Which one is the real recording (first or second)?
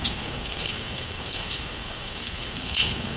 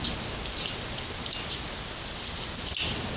second